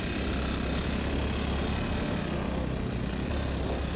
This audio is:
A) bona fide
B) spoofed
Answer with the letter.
A